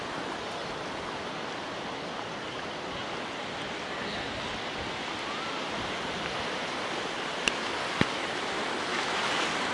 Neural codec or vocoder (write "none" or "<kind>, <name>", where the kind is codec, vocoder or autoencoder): none